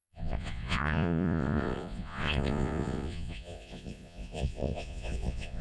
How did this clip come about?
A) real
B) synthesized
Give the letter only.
B